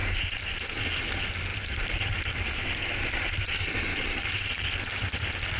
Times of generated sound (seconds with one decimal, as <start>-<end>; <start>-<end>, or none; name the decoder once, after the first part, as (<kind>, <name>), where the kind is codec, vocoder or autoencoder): 0.0-0.8 (vocoder, BigVGAN v2); 3.9-4.8